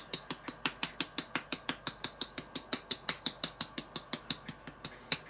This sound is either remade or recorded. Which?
recorded